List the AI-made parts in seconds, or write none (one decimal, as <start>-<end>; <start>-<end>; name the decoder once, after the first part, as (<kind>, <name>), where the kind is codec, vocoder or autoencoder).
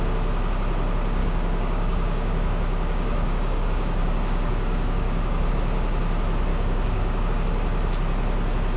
1.2-5.5 (codec, DAC); 6.5-7.3